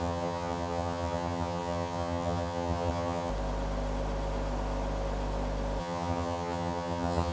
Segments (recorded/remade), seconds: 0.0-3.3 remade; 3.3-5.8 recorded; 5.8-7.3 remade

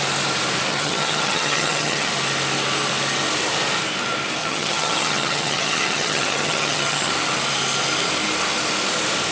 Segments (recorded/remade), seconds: 0.0-0.7 recorded; 0.7-2.1 remade; 2.1-4.4 recorded; 4.4-7.1 remade; 7.1-9.3 recorded

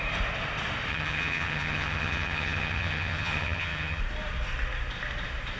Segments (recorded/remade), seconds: 0.0-0.9 recorded; 0.9-4.0 remade; 4.0-5.6 recorded

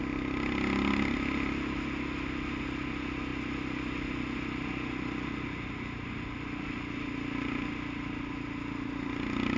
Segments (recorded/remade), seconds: 0.0-9.6 recorded